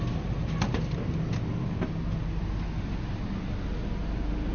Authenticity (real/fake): real